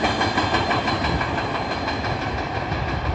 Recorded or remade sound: recorded